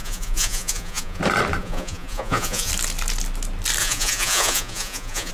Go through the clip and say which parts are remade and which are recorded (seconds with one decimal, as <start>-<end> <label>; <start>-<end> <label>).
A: 0.0-1.2 remade; 1.2-1.6 recorded; 1.6-2.7 remade; 2.7-3.8 recorded; 3.8-5.3 remade